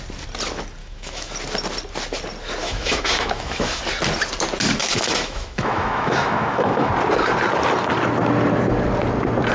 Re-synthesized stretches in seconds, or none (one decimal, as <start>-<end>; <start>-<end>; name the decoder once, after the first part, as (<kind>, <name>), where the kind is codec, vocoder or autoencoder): 0.8-1.3 (autoencoder, DAC-VAE); 2.6-3.8; 4.8-6.9